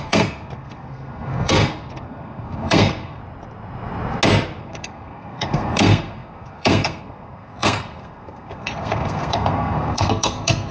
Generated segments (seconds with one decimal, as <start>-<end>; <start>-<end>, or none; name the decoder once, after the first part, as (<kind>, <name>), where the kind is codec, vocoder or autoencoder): 0.0-3.2 (codec, SNAC); 4.6-10.7

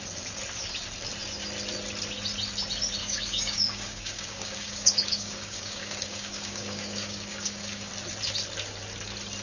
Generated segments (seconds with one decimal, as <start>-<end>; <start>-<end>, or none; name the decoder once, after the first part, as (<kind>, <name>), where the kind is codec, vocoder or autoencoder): 3.0-7.9 (codec, DAC)